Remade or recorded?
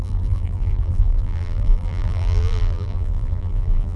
remade